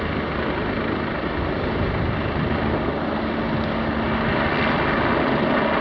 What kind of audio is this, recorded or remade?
recorded